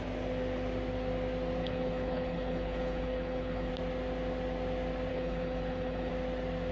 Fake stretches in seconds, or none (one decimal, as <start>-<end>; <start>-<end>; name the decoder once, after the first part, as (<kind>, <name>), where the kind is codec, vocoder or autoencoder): 1.6-3.7 (codec, HILCodec); 5.1-6.1